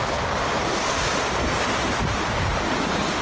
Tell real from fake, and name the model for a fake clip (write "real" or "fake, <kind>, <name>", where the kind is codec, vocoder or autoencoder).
real